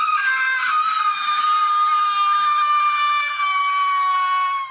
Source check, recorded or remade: recorded